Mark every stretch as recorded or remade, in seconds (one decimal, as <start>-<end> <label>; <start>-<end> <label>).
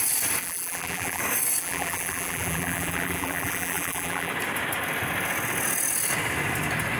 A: 0.0-0.4 recorded; 0.4-1.2 remade; 1.2-1.6 recorded; 1.6-4.3 remade; 4.3-7.0 recorded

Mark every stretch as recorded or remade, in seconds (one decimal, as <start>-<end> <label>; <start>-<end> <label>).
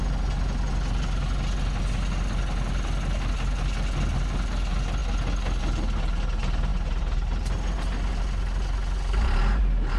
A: 0.0-10.0 recorded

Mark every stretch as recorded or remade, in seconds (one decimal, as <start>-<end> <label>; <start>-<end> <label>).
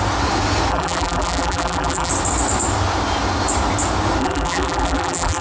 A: 0.0-0.7 recorded; 0.7-2.1 remade; 2.1-4.2 recorded; 4.2-5.4 remade